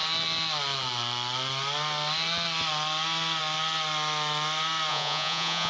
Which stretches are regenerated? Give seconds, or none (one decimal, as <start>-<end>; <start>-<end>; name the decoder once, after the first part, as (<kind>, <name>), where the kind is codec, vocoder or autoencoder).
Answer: 4.9-5.7 (vocoder, Vocos)